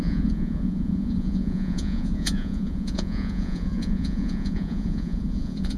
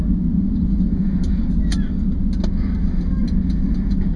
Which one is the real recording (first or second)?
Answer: second